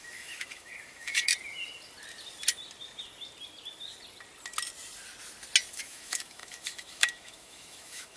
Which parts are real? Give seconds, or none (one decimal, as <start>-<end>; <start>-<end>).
1.3-5.7